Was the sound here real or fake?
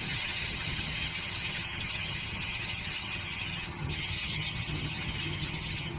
fake